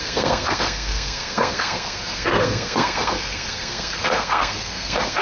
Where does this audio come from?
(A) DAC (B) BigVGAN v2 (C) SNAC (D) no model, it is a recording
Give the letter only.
C